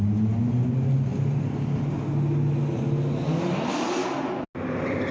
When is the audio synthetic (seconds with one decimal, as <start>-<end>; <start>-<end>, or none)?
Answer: none